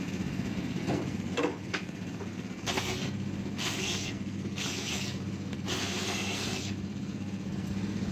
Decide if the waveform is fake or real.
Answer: fake